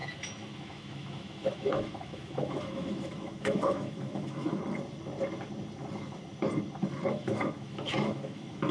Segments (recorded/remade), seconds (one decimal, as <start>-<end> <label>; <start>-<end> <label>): 0.0-4.6 remade; 4.6-7.1 recorded; 7.1-8.7 remade